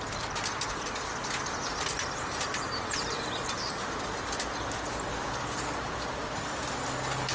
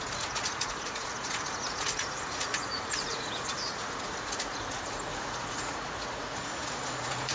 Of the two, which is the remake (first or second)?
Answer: second